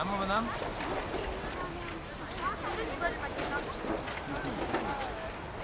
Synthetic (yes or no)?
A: no